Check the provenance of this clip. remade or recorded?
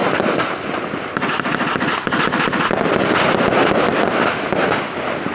recorded